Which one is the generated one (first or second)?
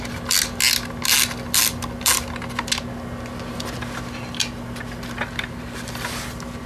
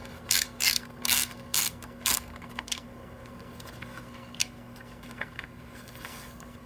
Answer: second